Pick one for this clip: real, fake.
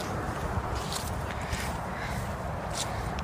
real